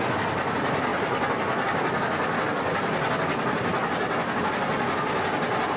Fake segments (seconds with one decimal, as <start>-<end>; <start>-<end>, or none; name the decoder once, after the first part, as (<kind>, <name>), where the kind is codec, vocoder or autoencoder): none